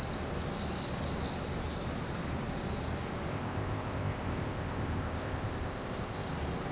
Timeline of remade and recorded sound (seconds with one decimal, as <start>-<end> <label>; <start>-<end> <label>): 0.0-3.3 recorded; 3.3-6.3 remade; 6.3-6.7 recorded